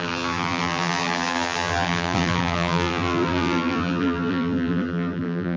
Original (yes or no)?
no